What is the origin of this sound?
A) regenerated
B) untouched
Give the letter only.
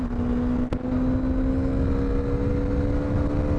B